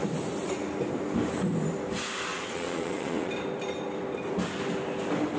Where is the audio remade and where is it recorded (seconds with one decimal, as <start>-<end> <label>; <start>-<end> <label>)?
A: 0.0-2.3 recorded; 2.3-3.3 remade; 3.3-5.4 recorded